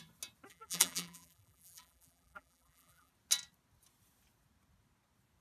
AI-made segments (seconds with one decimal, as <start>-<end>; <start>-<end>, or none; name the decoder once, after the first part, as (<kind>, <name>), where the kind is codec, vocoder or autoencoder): 0.5-3.1 (vocoder, BigVGAN v2)